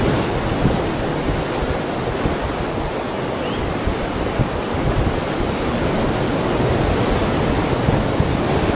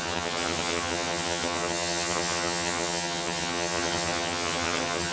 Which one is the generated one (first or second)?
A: second